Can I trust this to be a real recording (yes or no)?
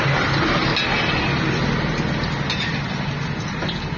yes